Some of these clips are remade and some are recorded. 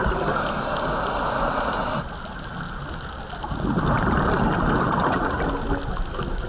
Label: recorded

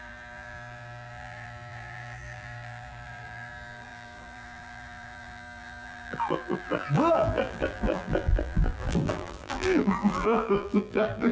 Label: remade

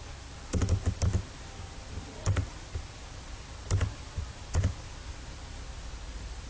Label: recorded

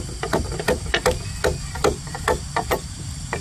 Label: recorded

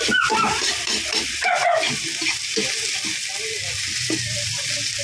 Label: remade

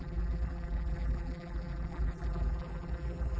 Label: remade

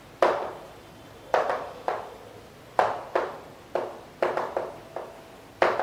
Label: recorded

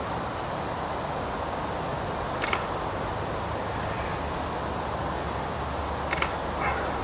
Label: recorded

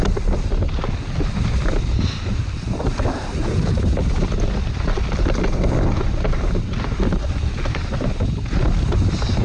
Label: recorded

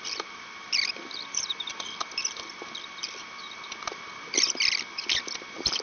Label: remade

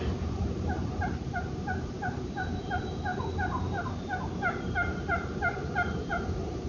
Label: remade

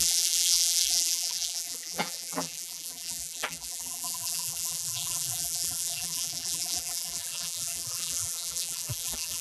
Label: remade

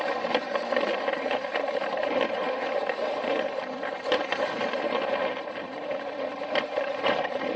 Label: remade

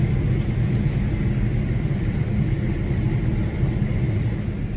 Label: recorded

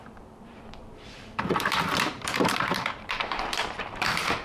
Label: remade